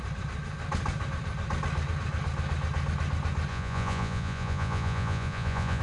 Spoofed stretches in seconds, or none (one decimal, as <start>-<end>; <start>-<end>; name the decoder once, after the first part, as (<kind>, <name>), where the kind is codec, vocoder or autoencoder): 3.5-5.8 (vocoder, Vocos)